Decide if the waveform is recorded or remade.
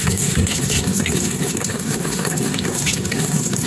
remade